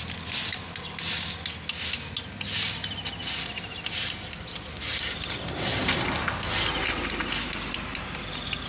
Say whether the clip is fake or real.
real